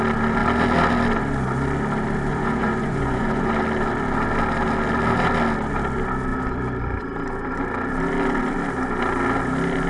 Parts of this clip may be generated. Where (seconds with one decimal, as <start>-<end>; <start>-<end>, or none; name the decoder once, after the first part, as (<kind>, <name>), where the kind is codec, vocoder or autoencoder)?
2.3-3.5 (vocoder, Vocos)